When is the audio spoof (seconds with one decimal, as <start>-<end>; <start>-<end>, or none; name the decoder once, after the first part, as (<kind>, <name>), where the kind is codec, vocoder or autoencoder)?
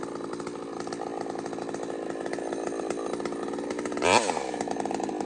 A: none